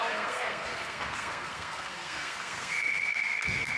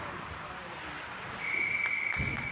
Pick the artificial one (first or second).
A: first